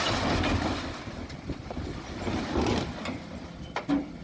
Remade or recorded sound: recorded